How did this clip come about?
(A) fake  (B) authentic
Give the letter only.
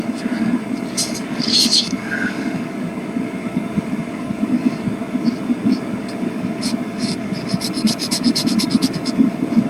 A